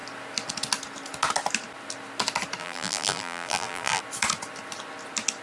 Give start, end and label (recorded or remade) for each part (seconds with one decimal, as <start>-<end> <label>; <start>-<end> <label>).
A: 0.0-2.6 recorded; 2.6-4.0 remade; 4.0-5.4 recorded